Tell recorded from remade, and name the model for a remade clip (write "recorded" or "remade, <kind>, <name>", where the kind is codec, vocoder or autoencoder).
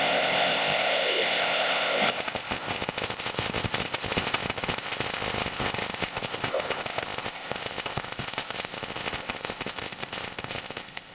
remade, codec, ZipCodec